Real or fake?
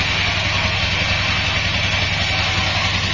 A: real